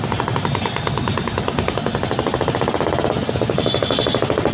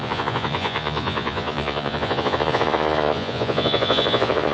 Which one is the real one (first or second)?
first